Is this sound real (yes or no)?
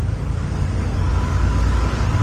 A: no